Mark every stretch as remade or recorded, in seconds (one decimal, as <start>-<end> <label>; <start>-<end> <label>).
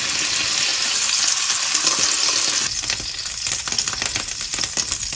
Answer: 0.0-5.2 recorded